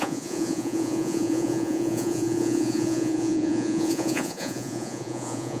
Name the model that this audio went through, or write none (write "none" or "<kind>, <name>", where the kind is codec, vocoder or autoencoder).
vocoder, Vocos